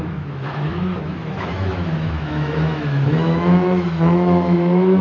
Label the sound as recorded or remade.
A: remade